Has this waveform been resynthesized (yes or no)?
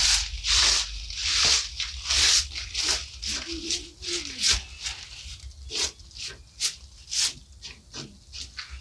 no